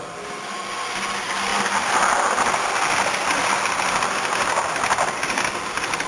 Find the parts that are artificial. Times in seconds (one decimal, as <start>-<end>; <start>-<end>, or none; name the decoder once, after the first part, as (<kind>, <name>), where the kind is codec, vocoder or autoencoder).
none